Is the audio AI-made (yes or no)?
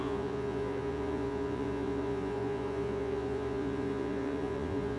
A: yes